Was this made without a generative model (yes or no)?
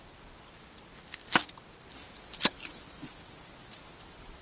yes